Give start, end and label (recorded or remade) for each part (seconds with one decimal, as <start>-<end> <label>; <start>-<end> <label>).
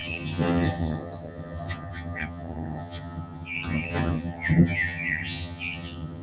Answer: 0.0-6.2 remade